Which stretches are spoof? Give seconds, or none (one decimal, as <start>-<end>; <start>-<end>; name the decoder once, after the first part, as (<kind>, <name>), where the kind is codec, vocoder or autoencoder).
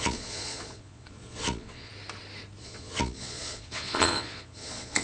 0.0-1.9 (vocoder, Vocos); 2.6-5.0